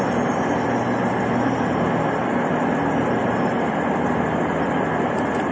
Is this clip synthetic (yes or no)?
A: no